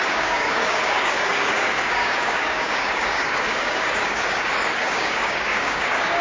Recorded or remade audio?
remade